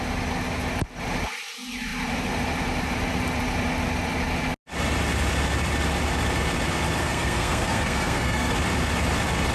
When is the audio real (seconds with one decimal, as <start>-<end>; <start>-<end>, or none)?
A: 0.0-7.0; 8.5-9.5